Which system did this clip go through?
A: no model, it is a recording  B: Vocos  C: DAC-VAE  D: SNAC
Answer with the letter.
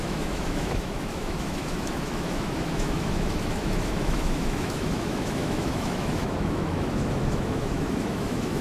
C